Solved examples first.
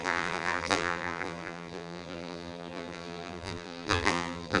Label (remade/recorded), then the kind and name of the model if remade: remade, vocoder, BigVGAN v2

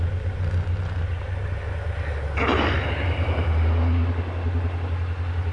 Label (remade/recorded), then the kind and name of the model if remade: recorded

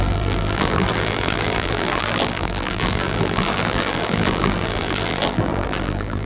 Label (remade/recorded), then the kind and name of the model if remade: remade, vocoder, BigVGAN v2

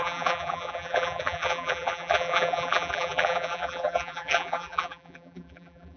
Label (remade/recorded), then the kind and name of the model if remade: remade, vocoder, BigVGAN v2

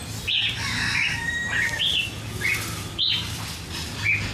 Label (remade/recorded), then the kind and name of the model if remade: recorded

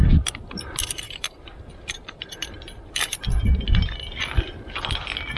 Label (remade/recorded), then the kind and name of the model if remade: remade, vocoder, BigVGAN v2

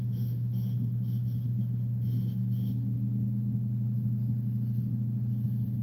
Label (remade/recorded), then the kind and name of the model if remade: recorded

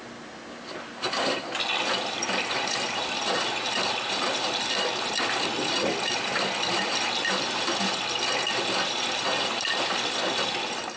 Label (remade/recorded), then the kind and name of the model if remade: recorded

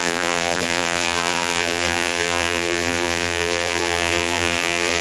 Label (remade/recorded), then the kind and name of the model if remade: remade, vocoder, BigVGAN v2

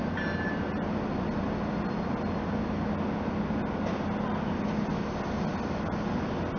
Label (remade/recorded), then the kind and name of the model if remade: recorded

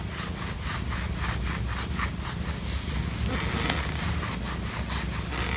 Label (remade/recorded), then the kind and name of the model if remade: recorded